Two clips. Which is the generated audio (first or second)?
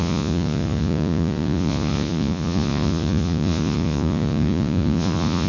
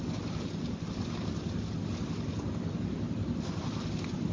first